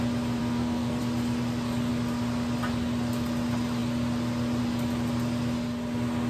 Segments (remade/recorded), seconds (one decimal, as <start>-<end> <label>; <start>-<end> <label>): 0.0-0.4 recorded; 0.4-1.0 remade; 1.0-6.3 recorded